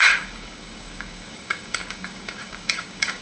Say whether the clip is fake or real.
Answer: fake